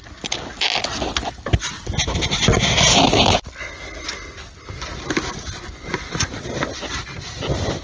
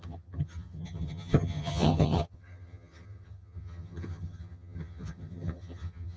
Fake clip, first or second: second